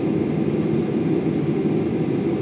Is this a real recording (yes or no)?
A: yes